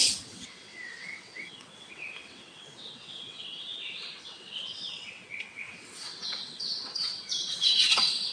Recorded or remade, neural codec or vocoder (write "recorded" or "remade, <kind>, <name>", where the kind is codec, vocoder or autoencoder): remade, vocoder, WaveNeXt